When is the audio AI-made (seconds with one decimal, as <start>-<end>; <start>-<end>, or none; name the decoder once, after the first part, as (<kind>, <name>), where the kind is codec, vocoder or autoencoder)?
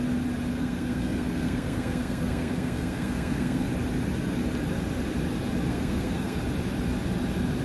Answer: 0.5-3.7 (codec, SNAC); 5.7-6.4